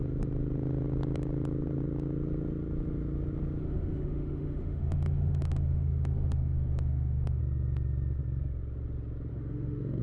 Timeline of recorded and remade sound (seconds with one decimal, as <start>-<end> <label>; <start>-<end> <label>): 0.0-3.6 recorded; 3.6-7.4 remade; 7.4-9.3 recorded; 9.3-10.0 remade